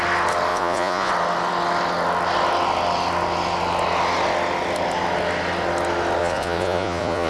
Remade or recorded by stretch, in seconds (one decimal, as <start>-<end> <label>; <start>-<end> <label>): 0.0-0.5 recorded; 0.5-1.1 remade; 1.1-6.2 recorded; 6.2-7.3 remade